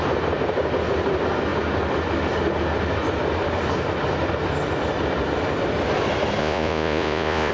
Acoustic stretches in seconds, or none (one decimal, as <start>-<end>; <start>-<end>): 0.0-6.4